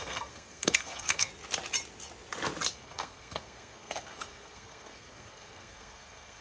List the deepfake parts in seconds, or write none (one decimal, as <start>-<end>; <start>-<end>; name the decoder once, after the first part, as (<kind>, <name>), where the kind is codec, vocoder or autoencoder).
0.0-1.3 (codec, SNAC); 2.7-6.4